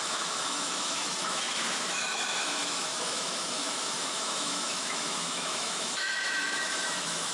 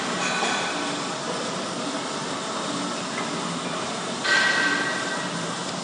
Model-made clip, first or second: first